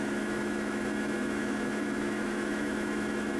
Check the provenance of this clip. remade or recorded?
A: remade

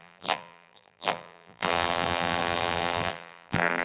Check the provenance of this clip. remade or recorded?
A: remade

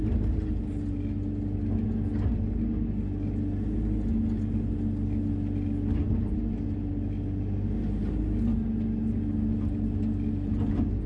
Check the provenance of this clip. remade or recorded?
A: recorded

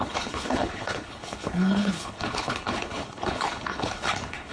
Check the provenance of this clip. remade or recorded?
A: remade